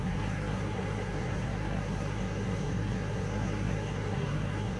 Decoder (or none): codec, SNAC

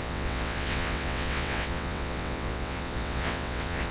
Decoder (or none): vocoder, WaveNeXt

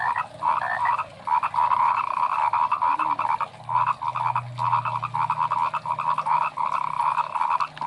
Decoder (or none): none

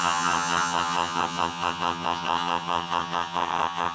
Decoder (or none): vocoder, HiFi-GAN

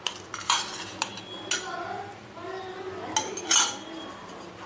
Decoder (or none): none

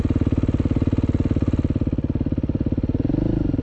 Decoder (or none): none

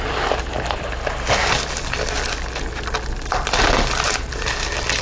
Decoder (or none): none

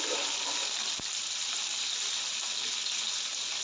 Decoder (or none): none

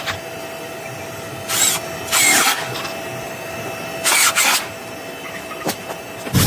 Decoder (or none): none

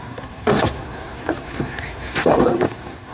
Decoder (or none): codec, SNAC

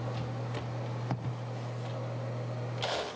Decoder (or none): none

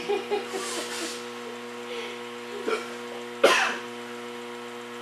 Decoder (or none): none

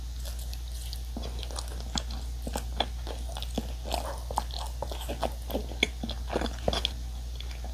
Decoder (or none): none